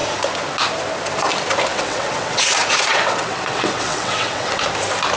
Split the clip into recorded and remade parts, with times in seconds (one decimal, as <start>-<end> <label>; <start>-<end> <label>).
0.0-1.7 recorded; 1.7-2.4 remade; 2.4-2.9 recorded; 2.9-4.6 remade; 4.6-5.2 recorded